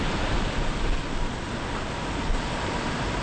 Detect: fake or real real